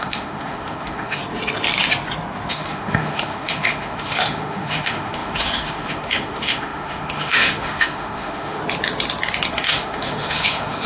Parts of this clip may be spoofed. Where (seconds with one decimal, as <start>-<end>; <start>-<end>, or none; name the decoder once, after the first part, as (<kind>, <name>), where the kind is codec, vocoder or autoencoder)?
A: 0.0-1.2 (autoencoder, DAC-VAE); 2.5-8.6; 9.5-10.9